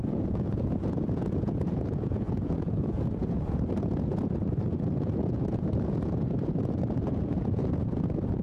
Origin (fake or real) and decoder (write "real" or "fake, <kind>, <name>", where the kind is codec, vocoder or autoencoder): fake, vocoder, Vocos